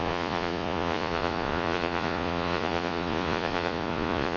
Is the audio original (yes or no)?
no